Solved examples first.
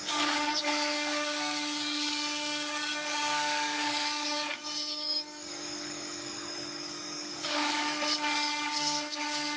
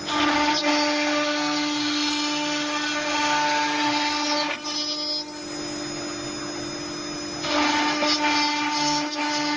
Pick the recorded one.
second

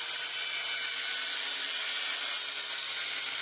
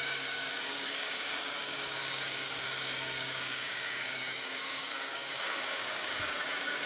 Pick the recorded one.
first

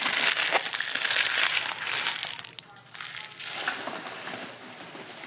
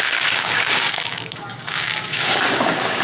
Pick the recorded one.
first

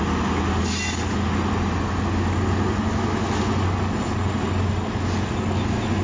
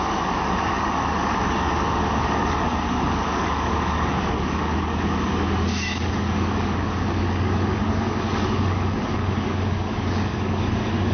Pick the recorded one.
first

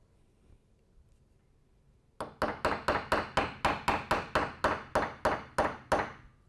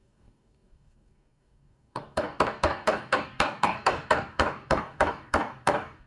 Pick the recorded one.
first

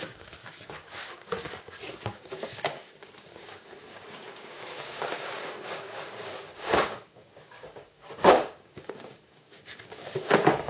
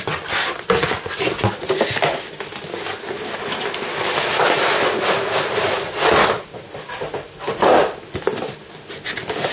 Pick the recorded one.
second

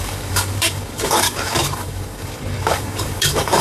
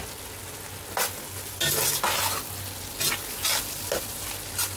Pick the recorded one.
second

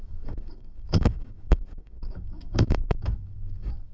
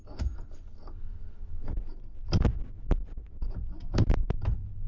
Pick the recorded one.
second